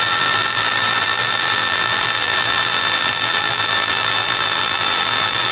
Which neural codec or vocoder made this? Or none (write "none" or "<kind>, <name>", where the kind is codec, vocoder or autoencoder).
vocoder, BigVGAN v2